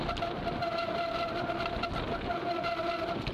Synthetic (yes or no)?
no